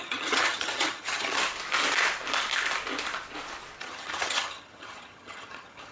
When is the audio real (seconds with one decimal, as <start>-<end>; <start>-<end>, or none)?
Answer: 1.4-3.8